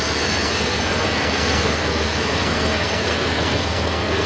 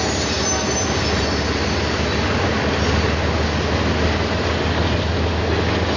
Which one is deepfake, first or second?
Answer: first